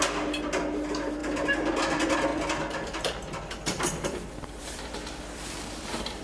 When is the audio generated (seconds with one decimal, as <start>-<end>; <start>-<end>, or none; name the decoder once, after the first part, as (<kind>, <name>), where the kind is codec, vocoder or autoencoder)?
2.3-6.2 (vocoder, BigVGAN v2)